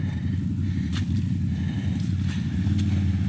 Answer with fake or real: real